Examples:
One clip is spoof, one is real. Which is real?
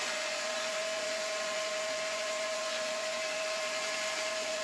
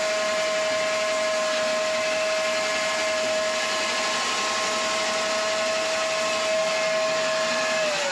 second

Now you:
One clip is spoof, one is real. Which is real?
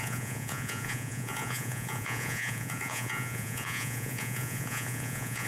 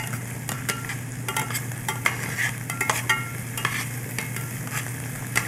second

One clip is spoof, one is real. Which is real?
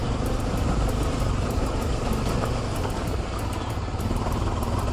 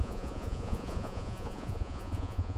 first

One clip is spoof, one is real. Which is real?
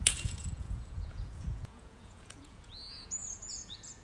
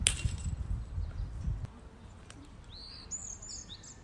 second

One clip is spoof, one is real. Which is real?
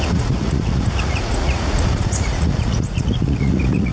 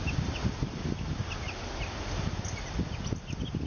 second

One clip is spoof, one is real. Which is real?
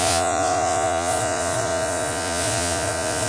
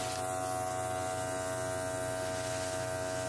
second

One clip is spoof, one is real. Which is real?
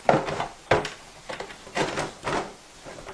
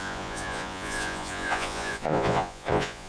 first